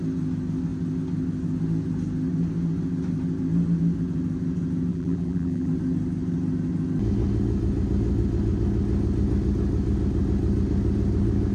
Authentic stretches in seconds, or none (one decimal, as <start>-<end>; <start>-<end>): 0.0-4.9; 5.7-11.5